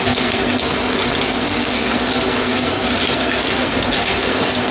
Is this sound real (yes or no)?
no